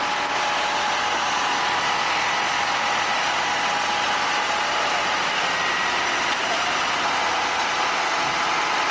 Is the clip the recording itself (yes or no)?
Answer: yes